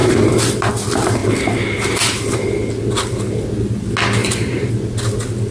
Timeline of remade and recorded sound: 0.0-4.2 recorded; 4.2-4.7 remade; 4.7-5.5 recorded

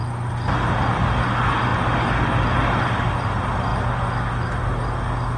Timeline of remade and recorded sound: 0.0-5.4 recorded

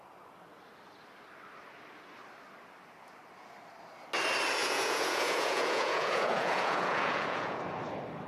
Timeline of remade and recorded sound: 0.0-4.6 recorded; 4.6-7.6 remade; 7.6-8.3 recorded